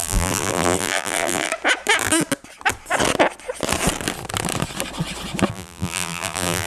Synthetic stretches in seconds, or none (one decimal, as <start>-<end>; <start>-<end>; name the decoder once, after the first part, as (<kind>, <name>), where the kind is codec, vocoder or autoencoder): 0.0-1.5 (vocoder, BigVGAN v2); 5.5-6.7